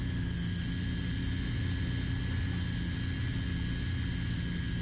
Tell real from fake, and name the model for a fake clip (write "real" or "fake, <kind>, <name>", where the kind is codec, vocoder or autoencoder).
real